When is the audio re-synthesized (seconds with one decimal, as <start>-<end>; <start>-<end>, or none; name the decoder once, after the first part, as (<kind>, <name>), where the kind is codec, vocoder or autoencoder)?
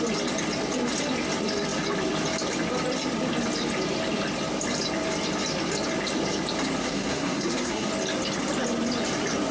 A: 6.8-7.9 (codec, SNAC)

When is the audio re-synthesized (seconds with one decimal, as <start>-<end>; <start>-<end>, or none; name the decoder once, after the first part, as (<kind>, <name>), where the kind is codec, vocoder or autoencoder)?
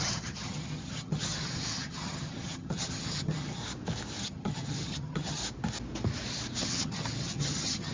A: 0.0-3.6 (vocoder, HiFi-GAN); 4.2-5.4; 6.6-7.9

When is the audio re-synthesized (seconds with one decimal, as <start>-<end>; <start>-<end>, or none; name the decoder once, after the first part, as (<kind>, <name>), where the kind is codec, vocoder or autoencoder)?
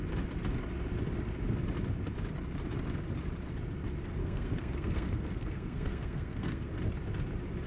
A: 4.2-6.7 (codec, SNAC)